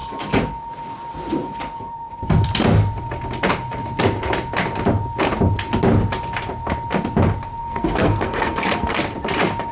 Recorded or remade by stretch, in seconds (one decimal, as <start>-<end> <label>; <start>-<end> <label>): 0.0-7.6 recorded; 7.6-9.0 remade; 9.0-9.7 recorded